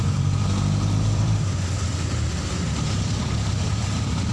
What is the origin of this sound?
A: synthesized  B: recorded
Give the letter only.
A